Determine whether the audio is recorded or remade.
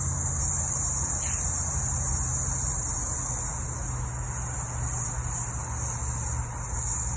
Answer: recorded